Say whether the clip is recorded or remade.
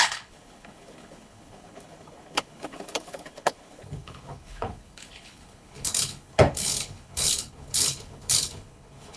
remade